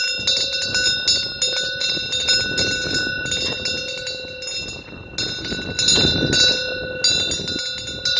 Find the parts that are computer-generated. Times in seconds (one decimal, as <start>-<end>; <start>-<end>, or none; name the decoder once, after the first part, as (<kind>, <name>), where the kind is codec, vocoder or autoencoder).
none